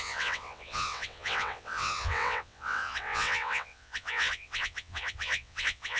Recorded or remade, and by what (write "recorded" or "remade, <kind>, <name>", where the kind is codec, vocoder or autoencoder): remade, vocoder, WaveNeXt